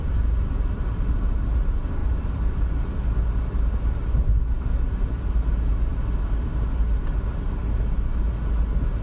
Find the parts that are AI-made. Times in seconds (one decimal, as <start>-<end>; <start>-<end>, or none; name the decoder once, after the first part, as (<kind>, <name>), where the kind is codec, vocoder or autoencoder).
none